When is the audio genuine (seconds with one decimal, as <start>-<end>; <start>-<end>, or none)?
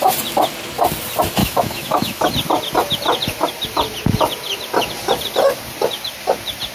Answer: 0.0-1.4; 2.3-6.7